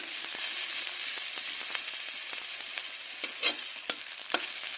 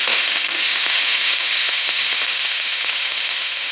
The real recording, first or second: first